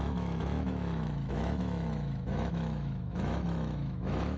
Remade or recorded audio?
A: remade